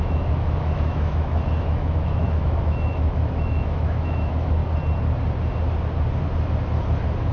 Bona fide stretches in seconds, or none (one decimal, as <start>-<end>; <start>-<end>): 4.6-7.3